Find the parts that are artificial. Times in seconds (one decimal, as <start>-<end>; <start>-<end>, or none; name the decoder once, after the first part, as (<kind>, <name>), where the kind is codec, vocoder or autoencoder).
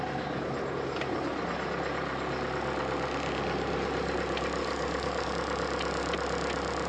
4.6-5.3 (codec, DAC)